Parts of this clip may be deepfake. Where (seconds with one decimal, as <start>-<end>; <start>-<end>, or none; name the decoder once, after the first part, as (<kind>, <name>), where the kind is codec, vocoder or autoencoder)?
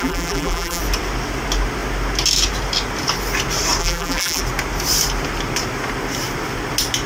0.0-0.8 (vocoder, BigVGAN v2); 3.8-4.4